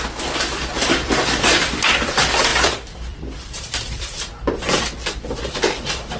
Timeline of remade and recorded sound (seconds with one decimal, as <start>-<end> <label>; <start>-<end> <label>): 0.0-6.2 remade